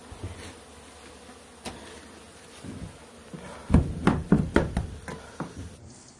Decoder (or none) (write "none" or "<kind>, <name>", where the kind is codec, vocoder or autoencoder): none